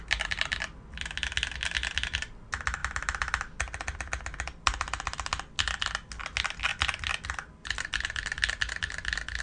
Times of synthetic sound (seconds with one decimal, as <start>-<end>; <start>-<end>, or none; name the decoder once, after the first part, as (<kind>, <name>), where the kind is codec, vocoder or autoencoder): 6.7-7.5 (vocoder, BigVGAN v2)